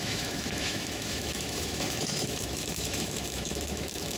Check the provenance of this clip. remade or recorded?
remade